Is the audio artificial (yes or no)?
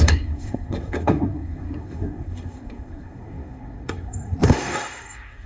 yes